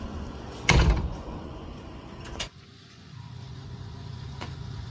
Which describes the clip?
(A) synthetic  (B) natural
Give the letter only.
A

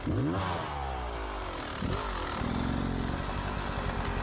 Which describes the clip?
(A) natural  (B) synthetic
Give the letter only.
A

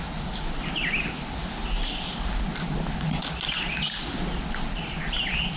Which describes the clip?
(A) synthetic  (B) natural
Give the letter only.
B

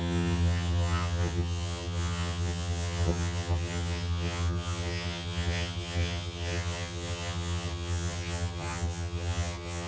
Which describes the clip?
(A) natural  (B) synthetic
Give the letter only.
B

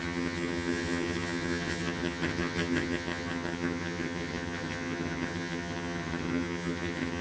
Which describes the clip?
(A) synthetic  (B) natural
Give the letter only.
A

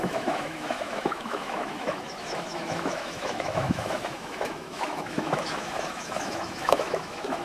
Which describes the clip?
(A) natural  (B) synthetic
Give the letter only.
B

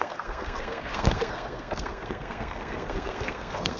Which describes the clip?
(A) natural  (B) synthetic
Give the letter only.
B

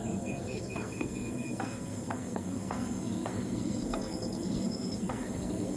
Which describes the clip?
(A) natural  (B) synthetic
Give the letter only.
B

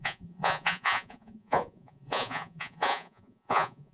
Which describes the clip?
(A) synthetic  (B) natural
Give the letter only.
A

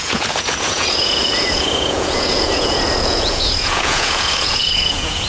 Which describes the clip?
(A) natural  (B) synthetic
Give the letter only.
B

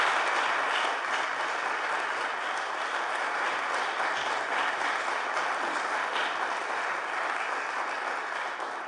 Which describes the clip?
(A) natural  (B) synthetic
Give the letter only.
A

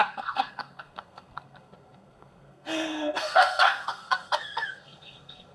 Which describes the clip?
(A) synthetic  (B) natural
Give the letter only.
A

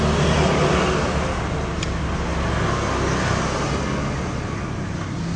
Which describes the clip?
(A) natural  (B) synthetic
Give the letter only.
A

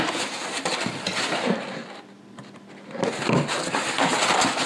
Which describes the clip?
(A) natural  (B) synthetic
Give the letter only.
A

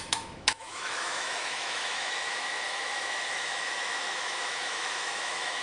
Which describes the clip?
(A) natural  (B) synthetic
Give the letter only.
B